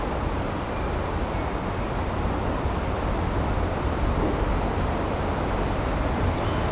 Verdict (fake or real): real